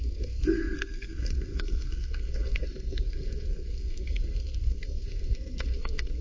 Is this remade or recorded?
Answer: remade